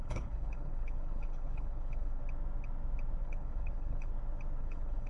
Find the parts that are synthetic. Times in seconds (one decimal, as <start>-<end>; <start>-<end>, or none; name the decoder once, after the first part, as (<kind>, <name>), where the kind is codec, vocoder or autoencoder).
0.0-2.2 (codec, HILCodec); 3.2-4.1; 4.6-5.1